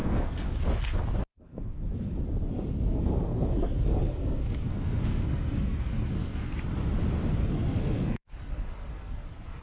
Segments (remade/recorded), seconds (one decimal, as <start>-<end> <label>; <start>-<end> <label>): 0.0-0.5 remade; 0.5-1.3 recorded; 1.3-1.8 remade; 1.8-2.5 recorded; 2.5-6.5 remade; 6.5-7.4 recorded; 7.4-9.6 remade